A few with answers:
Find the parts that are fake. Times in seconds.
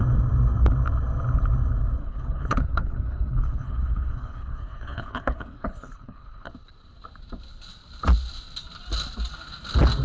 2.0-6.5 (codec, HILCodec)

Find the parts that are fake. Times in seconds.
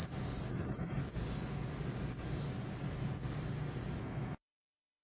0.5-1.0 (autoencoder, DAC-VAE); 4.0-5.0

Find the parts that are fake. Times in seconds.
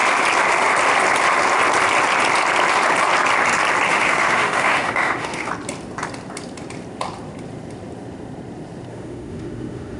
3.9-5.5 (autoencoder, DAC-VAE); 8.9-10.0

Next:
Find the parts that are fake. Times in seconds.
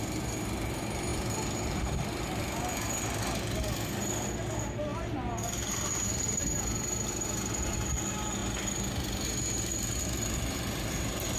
1.1-2.2 (vocoder, BigVGAN v2)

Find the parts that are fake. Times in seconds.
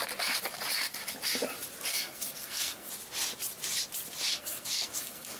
1.9-2.9 (codec, SNAC); 4.3-5.4